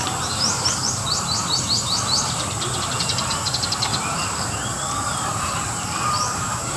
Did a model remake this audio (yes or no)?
yes